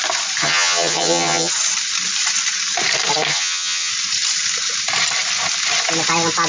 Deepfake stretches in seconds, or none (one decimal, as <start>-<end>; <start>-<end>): 0.4-1.5; 3.3-3.9